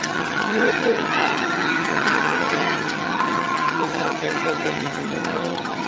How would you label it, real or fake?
fake